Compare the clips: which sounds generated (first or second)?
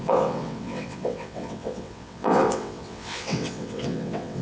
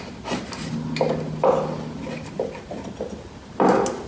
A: first